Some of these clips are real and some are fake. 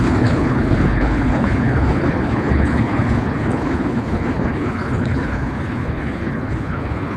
fake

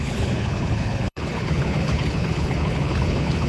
fake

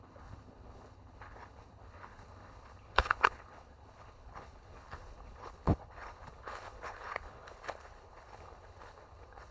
fake